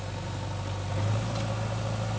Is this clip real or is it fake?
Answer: real